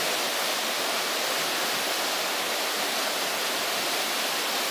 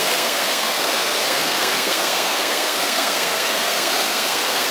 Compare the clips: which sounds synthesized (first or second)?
second